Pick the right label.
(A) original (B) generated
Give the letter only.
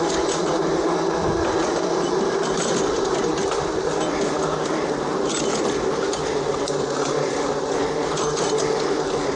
A